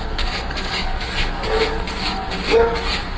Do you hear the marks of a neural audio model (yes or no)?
yes